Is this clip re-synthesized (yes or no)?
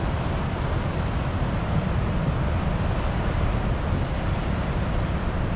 no